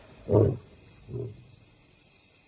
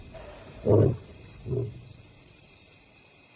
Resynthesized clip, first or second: second